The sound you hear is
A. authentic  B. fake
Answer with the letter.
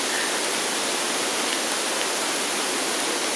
A